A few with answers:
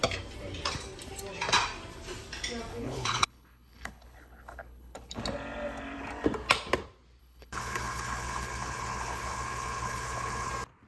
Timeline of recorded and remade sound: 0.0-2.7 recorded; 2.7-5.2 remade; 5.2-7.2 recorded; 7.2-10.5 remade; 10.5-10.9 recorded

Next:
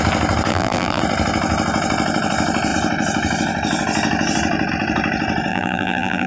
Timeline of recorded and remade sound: 0.0-0.5 recorded; 0.5-1.0 remade; 1.0-5.5 recorded; 5.5-6.3 remade

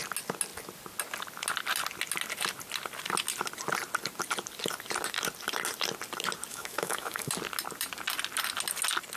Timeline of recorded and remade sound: 0.0-6.5 recorded; 6.5-7.3 remade; 7.3-9.2 recorded

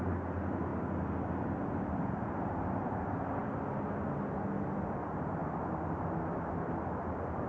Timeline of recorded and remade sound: 0.0-7.5 recorded